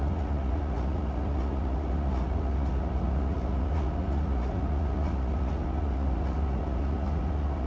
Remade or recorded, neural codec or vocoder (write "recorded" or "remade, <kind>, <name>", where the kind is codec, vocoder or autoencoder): remade, vocoder, Vocos